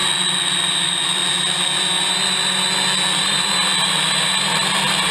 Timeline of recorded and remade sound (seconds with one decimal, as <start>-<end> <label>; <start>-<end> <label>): 0.0-0.7 recorded; 0.7-1.2 remade; 1.2-3.2 recorded; 3.2-5.1 remade